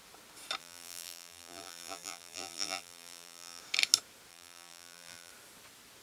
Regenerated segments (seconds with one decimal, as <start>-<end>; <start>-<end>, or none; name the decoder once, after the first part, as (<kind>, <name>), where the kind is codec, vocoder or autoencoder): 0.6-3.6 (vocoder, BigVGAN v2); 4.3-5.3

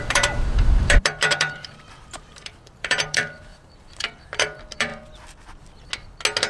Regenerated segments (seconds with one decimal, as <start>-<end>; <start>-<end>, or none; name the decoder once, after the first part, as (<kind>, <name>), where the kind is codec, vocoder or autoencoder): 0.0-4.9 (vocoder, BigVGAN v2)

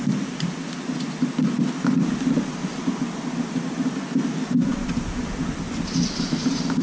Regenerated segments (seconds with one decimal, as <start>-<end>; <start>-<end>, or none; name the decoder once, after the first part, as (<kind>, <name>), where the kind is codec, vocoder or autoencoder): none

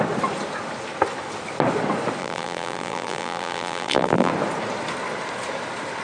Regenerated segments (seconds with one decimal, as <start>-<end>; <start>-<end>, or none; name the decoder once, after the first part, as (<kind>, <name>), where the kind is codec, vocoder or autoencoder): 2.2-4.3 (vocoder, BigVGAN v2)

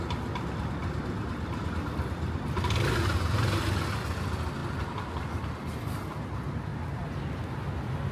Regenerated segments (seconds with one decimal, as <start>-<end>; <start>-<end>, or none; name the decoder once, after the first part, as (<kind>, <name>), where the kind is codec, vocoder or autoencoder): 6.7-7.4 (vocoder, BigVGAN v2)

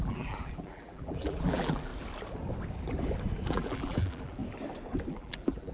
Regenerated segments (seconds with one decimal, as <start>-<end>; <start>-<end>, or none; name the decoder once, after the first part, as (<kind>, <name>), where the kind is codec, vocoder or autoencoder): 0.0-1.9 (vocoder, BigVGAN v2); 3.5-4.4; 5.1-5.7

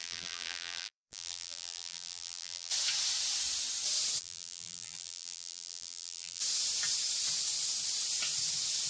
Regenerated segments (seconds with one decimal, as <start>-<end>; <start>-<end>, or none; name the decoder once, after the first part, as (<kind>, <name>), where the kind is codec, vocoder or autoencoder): 0.0-2.7 (vocoder, BigVGAN v2); 4.2-6.4

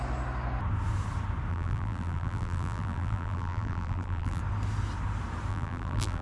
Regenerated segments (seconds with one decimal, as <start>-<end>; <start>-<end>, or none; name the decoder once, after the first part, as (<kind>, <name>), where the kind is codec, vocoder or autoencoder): 1.5-4.4 (vocoder, BigVGAN v2); 5.5-6.2